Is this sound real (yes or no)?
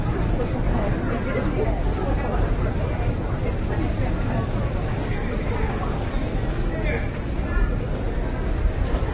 yes